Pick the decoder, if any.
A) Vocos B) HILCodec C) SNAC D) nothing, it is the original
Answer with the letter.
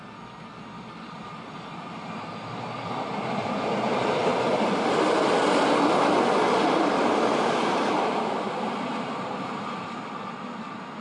D